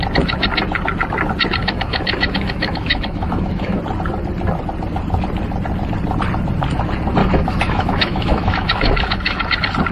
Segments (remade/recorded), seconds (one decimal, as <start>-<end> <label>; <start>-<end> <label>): 0.0-1.6 recorded; 1.6-3.8 remade; 3.8-7.2 recorded; 7.2-9.5 remade; 9.5-9.9 recorded